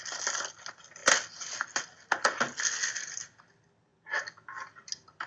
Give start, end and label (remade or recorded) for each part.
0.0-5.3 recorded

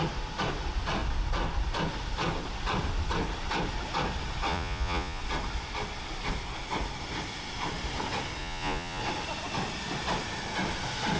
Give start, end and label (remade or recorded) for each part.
0.0-4.5 recorded; 4.5-5.2 remade; 5.2-8.4 recorded; 8.4-9.0 remade; 9.0-11.2 recorded

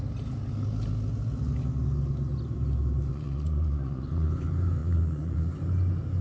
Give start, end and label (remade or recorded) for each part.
0.0-3.1 recorded; 3.1-4.3 remade; 4.3-4.8 recorded; 4.8-5.5 remade; 5.5-6.2 recorded

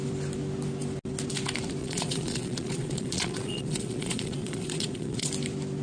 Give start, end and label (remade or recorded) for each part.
0.0-1.8 recorded; 1.8-5.3 remade; 5.3-5.8 recorded

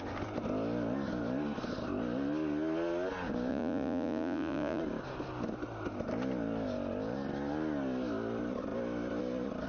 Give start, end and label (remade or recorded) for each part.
0.0-3.5 recorded; 3.5-4.8 remade; 4.8-9.7 recorded

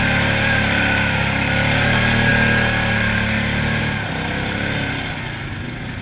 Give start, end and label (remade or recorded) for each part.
0.0-6.0 recorded